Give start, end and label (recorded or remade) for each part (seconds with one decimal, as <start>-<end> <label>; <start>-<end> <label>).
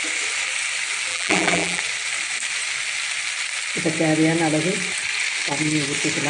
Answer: 0.0-1.1 recorded; 1.1-1.8 remade; 1.8-6.3 recorded